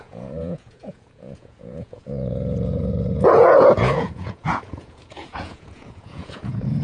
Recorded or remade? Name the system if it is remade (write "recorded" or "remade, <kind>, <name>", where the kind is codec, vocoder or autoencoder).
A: remade, vocoder, Vocos